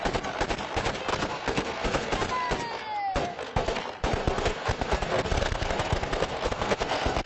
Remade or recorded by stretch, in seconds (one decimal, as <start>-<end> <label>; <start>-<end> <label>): 0.0-1.1 recorded; 1.1-2.1 remade; 2.1-3.3 recorded; 3.3-3.8 remade; 3.8-4.2 recorded; 4.2-7.3 remade